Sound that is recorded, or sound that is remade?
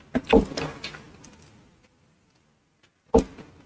recorded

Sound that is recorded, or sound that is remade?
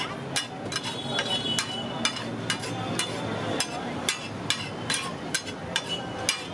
recorded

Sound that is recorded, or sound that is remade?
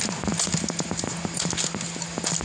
recorded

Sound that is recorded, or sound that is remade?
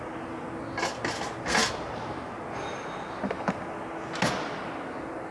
recorded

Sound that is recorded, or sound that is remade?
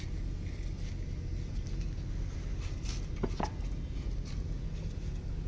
recorded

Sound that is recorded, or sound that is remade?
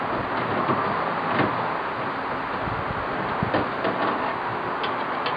recorded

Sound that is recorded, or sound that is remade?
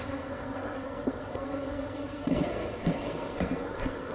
remade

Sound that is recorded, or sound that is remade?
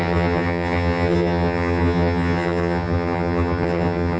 remade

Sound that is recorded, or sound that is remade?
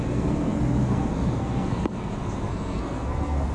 remade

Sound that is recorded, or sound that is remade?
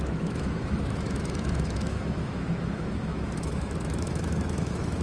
remade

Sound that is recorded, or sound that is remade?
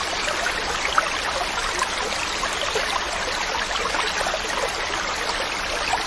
recorded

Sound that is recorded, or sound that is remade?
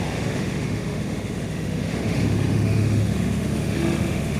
remade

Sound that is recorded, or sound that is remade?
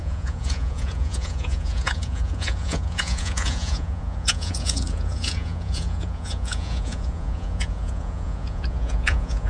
remade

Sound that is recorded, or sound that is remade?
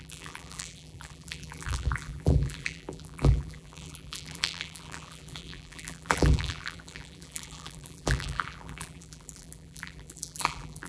remade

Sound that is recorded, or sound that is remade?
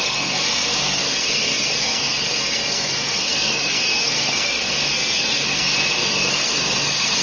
remade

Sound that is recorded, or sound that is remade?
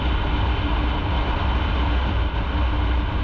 recorded